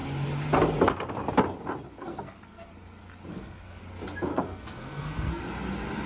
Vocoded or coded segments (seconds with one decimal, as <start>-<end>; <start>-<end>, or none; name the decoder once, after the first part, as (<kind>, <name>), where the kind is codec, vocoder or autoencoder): 2.0-2.7 (codec, SNAC); 3.3-3.8; 4.3-5.4